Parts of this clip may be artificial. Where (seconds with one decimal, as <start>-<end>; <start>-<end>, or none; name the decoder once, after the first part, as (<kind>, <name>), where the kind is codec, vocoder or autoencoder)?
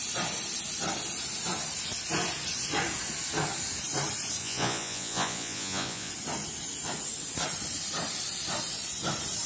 4.4-6.1 (vocoder, Vocos)